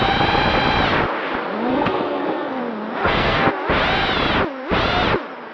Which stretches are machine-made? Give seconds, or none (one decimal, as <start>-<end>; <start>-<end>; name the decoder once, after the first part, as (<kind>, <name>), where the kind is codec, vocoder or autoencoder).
1.7-2.6 (codec, SNAC); 3.0-3.5